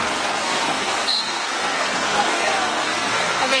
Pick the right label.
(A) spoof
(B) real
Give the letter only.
A